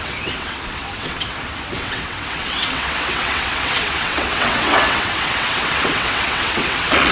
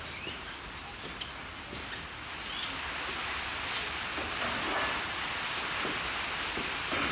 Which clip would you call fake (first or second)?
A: first